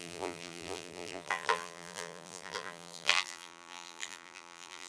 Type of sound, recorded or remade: remade